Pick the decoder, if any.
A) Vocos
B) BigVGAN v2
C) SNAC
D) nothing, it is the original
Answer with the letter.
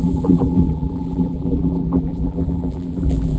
B